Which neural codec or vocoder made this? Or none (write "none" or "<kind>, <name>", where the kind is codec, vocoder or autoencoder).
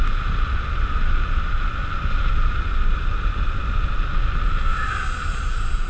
none